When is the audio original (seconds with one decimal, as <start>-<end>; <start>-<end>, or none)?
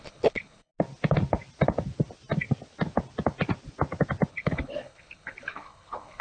0.7-4.3